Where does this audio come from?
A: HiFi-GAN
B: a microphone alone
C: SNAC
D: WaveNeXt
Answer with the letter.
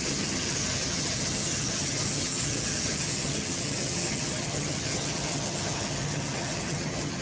A